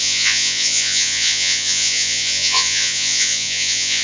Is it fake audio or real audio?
fake